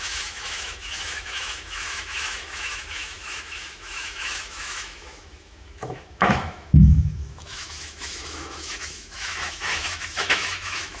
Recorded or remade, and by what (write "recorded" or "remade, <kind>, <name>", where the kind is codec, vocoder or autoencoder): remade, autoencoder, DAC-VAE